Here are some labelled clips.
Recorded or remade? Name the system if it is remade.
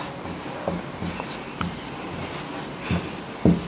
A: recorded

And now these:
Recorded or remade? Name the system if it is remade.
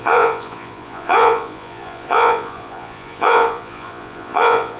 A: remade, vocoder, Vocos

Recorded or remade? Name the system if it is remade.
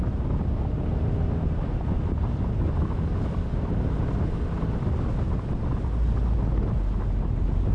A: recorded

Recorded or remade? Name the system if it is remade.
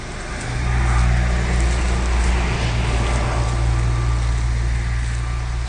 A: recorded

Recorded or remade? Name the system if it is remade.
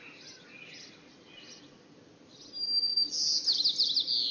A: recorded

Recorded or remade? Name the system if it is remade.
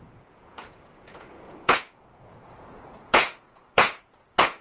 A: remade, vocoder, Vocos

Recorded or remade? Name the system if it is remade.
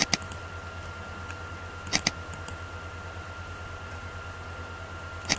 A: recorded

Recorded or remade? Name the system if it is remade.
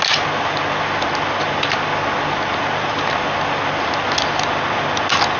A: recorded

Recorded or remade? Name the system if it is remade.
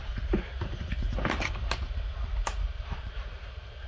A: recorded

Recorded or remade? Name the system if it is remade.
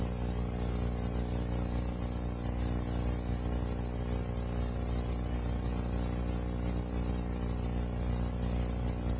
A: recorded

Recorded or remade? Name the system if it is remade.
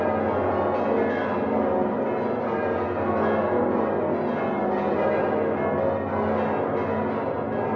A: recorded